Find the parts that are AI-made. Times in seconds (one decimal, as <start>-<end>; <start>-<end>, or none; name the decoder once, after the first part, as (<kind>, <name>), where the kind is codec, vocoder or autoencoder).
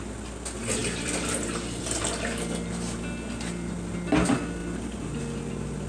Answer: 0.8-1.8 (vocoder, BigVGAN v2); 4.6-5.2